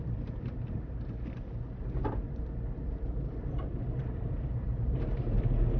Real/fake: real